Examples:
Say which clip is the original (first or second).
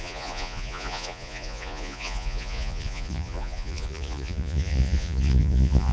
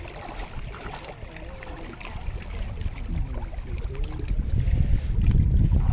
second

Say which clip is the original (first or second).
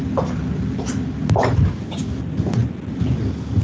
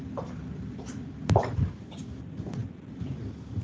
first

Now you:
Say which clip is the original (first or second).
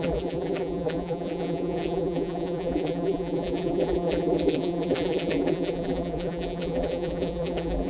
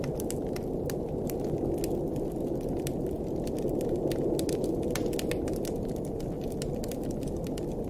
second